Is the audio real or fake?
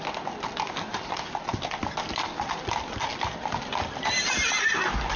real